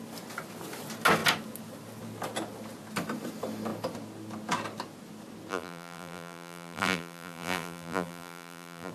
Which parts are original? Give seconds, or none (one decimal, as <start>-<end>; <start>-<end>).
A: 0.0-5.5

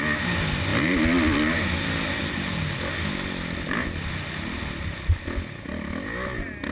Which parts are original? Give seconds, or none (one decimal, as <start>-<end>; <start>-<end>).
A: 0.0-6.7

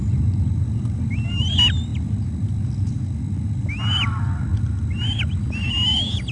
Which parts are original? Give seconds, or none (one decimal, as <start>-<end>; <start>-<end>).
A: 0.0-6.3

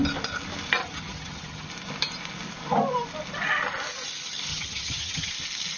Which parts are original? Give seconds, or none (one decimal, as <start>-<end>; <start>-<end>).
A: 0.0-0.8; 1.7-4.5; 5.3-5.8